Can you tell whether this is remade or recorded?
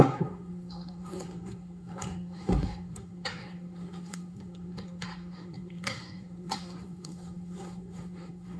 remade